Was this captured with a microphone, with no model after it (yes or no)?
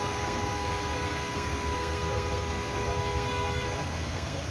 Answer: no